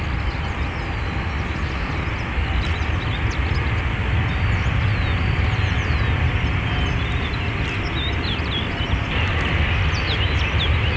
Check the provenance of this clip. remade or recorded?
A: recorded